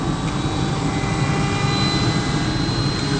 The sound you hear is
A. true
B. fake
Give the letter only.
A